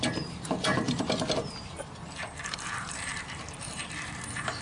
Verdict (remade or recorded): remade